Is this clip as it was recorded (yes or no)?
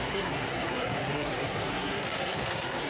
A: no